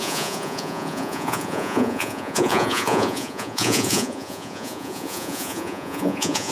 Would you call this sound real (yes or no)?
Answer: no